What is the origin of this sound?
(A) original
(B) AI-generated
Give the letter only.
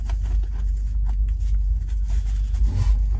A